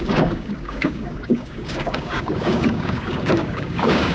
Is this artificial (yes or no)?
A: yes